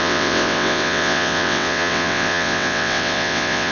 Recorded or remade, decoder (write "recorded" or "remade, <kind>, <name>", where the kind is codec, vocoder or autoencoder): remade, vocoder, WaveNeXt